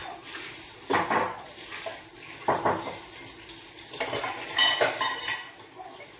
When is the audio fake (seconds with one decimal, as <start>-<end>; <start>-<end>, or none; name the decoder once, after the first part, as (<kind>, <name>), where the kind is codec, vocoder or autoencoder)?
0.0-1.0 (vocoder, BigVGAN v2)